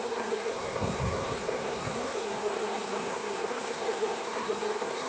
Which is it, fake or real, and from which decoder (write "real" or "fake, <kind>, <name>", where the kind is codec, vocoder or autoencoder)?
fake, codec, SNAC